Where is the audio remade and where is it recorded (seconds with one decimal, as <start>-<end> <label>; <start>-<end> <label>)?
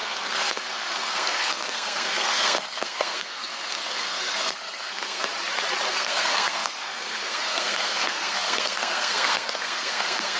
0.0-5.2 remade; 5.2-5.9 recorded; 5.9-10.4 remade